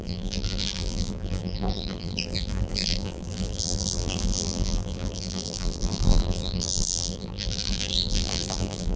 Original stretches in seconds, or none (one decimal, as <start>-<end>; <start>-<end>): none